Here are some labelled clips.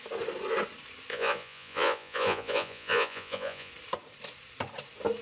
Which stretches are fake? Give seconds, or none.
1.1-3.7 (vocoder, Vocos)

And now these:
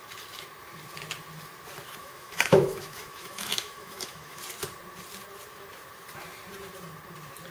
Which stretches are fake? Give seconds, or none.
2.0-4.4 (autoencoder, DAC-VAE)

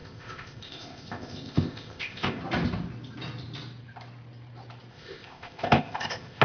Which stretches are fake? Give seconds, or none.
0.0-2.4 (codec, ZipCodec); 4.9-6.4

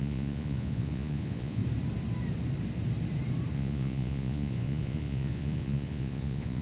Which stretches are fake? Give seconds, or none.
0.0-1.6 (vocoder, Vocos); 3.5-6.6